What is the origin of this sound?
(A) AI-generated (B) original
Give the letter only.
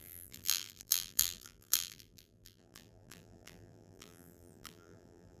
A